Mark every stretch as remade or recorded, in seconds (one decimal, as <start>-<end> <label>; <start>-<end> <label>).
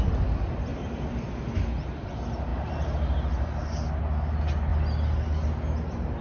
0.0-0.7 recorded; 0.7-1.4 remade; 1.4-6.2 recorded